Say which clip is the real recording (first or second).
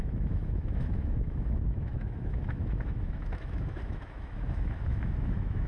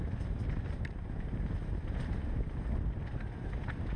second